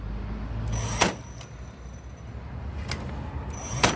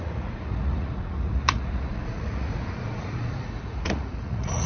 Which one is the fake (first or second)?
second